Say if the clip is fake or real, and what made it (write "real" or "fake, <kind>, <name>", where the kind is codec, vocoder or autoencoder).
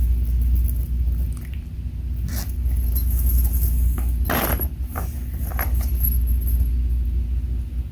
real